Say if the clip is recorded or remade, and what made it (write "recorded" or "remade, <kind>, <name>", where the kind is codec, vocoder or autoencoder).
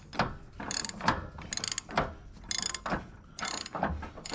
recorded